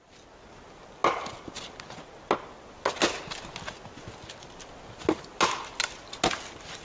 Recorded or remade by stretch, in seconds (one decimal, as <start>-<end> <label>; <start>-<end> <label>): 0.0-6.8 recorded